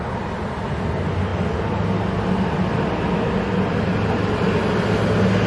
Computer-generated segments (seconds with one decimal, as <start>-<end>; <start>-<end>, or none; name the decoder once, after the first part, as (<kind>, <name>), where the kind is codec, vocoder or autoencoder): none